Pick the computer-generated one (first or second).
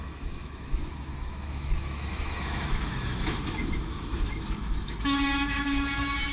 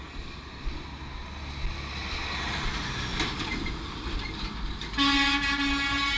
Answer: first